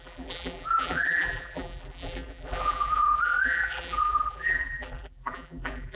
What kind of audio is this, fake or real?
fake